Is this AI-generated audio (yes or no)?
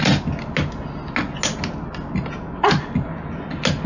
no